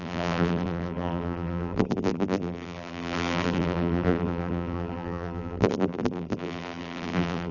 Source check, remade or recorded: remade